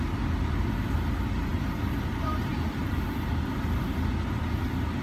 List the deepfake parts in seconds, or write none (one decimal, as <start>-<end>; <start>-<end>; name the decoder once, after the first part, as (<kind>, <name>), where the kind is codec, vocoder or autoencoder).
none